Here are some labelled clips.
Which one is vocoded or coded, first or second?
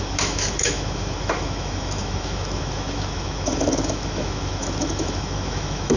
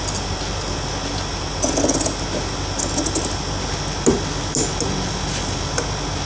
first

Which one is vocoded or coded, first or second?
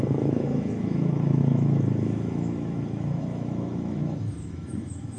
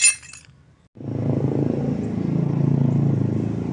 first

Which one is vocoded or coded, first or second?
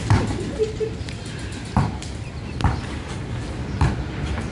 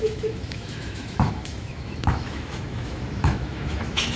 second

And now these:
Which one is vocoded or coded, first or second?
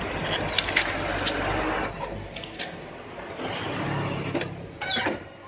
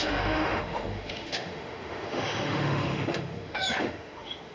second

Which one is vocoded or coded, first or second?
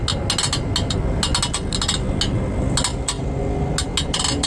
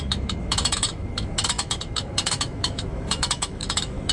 second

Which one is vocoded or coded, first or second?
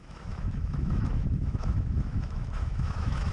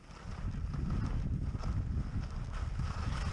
first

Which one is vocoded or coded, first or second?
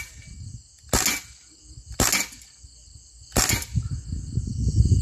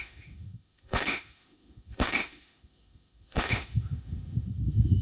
second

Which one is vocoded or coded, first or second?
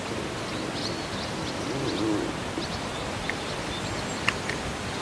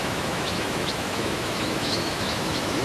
second